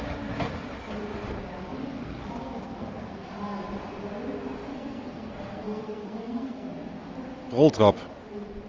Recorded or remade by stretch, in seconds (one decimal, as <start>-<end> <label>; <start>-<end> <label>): 0.0-1.8 recorded; 1.8-3.3 remade; 3.3-4.7 recorded; 4.7-6.7 remade; 6.7-8.7 recorded